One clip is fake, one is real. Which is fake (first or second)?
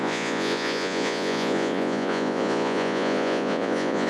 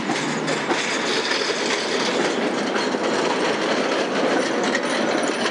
first